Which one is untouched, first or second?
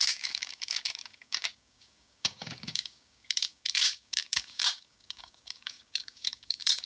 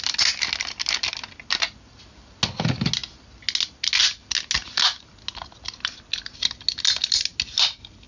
second